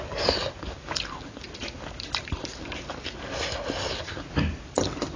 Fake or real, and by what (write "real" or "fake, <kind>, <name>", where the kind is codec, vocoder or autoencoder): real